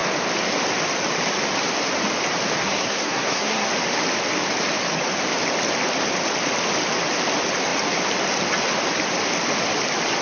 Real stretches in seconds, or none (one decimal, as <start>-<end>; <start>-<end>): 0.0-2.6; 3.7-10.2